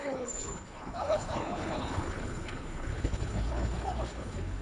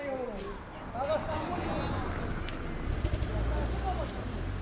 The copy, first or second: first